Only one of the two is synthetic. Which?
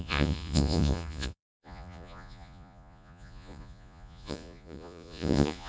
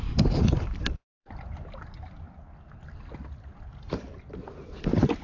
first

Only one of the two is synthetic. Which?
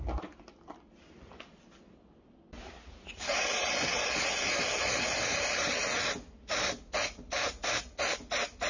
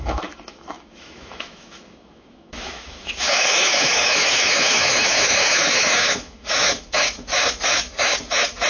second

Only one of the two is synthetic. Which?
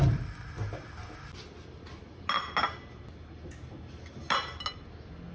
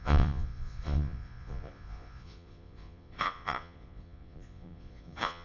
second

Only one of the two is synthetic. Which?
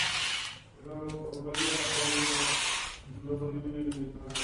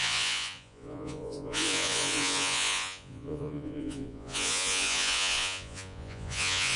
second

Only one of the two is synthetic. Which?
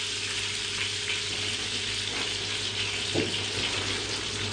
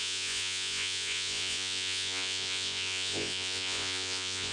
second